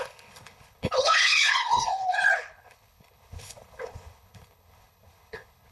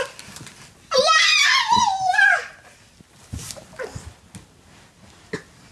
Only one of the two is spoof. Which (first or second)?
first